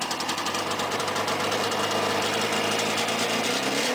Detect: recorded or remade recorded